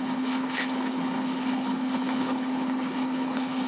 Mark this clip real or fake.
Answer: fake